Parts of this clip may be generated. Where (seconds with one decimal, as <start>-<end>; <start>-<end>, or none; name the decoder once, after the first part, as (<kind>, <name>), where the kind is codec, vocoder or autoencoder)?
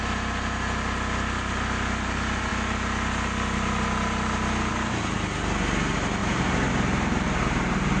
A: 6.2-6.7 (vocoder, BigVGAN v2)